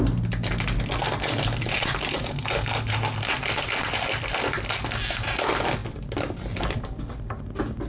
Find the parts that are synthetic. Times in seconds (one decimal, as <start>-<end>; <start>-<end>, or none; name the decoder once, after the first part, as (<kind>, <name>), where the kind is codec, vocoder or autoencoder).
none

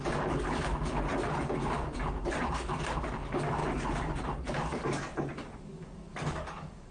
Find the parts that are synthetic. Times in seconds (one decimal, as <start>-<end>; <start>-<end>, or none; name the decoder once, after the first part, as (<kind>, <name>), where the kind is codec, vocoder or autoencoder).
0.0-1.1 (codec, DAC); 3.0-3.6; 4.5-6.9

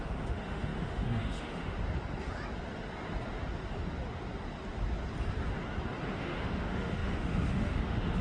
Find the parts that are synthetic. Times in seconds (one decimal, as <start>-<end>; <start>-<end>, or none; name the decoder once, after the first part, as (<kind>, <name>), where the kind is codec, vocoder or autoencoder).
0.0-1.8 (autoencoder, DAC-VAE); 6.1-8.2

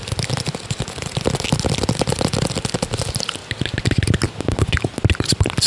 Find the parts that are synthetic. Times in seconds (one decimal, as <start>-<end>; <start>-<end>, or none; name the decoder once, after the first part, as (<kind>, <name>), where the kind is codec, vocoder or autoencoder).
none

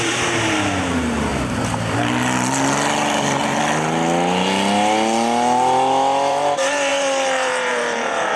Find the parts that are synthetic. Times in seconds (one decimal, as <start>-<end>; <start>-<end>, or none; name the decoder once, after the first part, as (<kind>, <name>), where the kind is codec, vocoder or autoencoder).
0.0-1.3 (vocoder, BigVGAN v2); 6.3-8.4

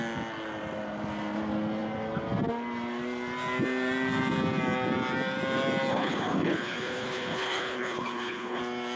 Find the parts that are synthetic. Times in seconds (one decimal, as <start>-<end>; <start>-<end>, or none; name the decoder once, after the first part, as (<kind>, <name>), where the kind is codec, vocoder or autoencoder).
5.9-8.6 (codec, HILCodec)

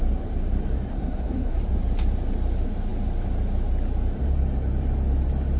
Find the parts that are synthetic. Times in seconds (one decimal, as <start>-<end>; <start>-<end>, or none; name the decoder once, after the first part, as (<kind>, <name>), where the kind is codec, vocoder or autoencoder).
0.9-1.6 (codec, SNAC)

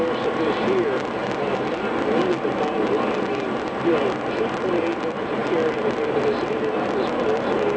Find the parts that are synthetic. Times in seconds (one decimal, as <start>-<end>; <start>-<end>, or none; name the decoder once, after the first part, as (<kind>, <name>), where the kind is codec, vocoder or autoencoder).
none